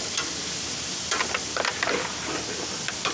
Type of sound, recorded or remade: recorded